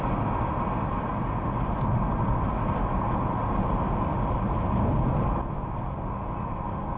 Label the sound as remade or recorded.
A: recorded